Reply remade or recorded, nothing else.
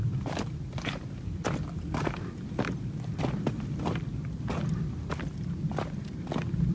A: recorded